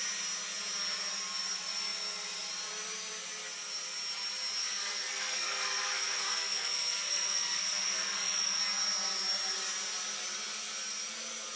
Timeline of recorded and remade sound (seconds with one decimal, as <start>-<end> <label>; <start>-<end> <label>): 0.0-4.6 recorded; 4.6-8.6 remade; 8.6-11.6 recorded